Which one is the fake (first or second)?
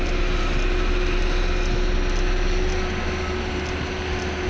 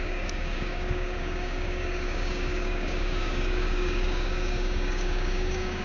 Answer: second